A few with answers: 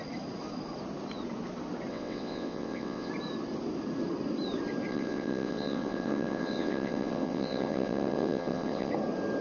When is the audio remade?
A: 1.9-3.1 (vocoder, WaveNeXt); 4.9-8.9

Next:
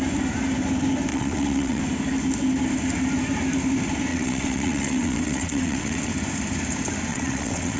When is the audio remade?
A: 1.1-1.8 (vocoder, WaveNeXt); 4.1-6.1; 7.1-7.8

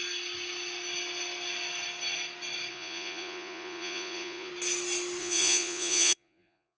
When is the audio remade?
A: 2.7-4.5 (vocoder, Vocos); 5.2-6.8

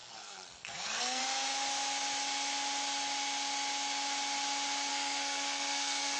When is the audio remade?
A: 0.0-1.2 (codec, SNAC); 4.9-6.2

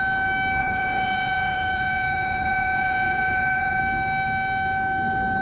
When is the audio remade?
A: 0.6-3.8 (vocoder, Vocos)

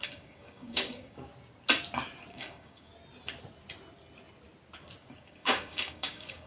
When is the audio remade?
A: 0.0-1.3 (codec, DAC); 2.3-2.9; 5.0-6.5

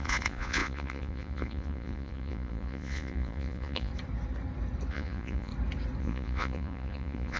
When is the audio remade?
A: 0.0-3.9 (vocoder, Vocos); 4.9-5.5; 6.0-7.4